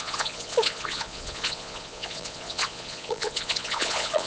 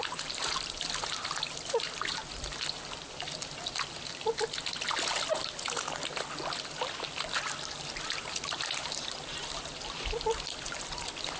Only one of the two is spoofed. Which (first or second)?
first